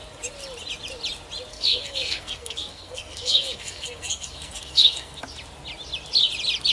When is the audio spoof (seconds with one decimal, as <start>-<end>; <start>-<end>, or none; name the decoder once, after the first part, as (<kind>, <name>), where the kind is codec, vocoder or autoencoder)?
1.5-5.2 (codec, SNAC)

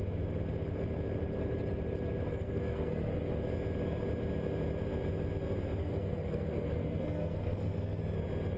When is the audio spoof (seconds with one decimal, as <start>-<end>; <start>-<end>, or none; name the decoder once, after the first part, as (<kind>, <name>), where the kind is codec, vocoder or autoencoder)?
2.3-3.1 (codec, SNAC); 5.8-8.0

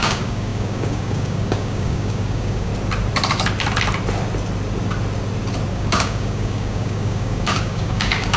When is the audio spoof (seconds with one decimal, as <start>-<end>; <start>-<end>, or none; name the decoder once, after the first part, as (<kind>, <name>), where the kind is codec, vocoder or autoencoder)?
0.0-2.7 (codec, DAC); 5.7-8.4

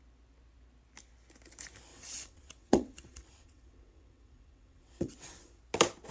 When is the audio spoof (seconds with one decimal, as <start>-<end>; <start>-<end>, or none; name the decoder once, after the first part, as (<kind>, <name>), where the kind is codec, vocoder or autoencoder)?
1.9-5.6 (vocoder, WaveNeXt)

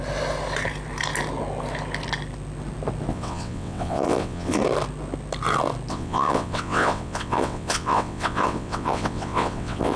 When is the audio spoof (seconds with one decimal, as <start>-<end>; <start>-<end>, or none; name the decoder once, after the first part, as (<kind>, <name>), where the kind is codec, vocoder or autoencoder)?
3.1-4.6 (vocoder, WaveNeXt); 5.9-10.0

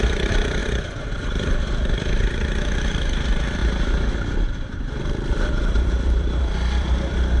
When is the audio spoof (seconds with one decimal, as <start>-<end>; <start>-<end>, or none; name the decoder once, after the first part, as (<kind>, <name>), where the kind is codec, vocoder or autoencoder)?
0.0-3.6 (vocoder, BigVGAN v2); 4.1-7.4

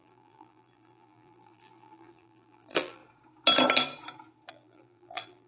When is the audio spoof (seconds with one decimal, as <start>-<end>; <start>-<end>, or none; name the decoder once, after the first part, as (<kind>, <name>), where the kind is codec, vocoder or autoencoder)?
0.0-3.0 (vocoder, BigVGAN v2); 4.5-5.5

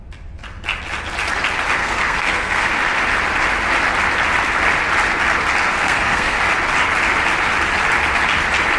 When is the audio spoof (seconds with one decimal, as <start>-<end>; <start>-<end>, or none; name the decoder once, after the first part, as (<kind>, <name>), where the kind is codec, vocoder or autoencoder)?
1.8-2.7 (codec, SNAC); 5.8-6.4